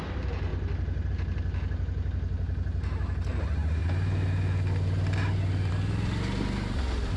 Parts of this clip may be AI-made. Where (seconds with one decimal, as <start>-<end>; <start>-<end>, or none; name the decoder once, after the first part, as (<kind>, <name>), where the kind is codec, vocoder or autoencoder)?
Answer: 0.5-1.1 (vocoder, BigVGAN v2)